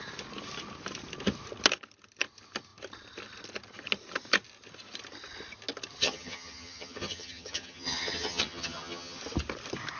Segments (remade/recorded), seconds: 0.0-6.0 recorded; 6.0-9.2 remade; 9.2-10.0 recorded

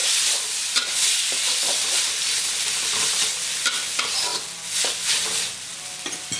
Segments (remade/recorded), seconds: 0.0-2.7 remade; 2.7-6.4 recorded

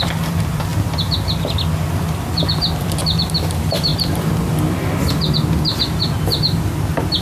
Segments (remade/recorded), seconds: 0.0-7.2 recorded

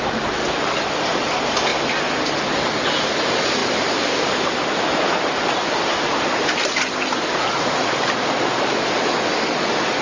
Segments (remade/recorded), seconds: 0.0-10.0 recorded

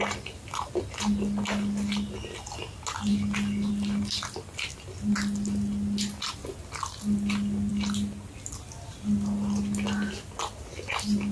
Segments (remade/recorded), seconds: 0.0-11.3 recorded